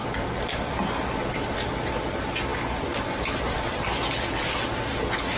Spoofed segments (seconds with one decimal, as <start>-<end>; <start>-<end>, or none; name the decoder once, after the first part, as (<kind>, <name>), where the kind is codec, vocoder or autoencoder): none